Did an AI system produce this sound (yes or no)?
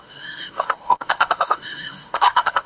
yes